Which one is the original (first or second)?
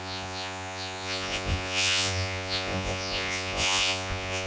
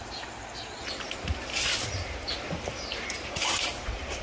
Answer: second